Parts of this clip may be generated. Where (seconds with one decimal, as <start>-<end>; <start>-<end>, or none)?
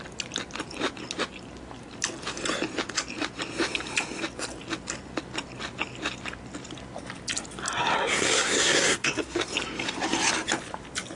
8.1-9.4